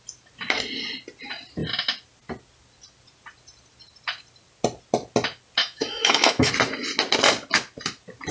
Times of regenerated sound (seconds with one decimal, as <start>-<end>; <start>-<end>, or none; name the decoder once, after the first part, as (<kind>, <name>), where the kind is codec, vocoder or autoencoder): 5.6-6.5 (autoencoder, DAC-VAE)